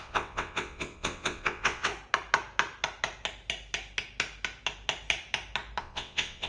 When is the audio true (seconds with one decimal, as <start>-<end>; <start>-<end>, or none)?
1.9-5.8